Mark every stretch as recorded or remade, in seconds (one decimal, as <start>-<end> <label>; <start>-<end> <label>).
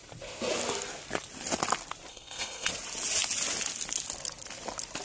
0.0-2.1 recorded; 2.1-2.7 remade; 2.7-5.0 recorded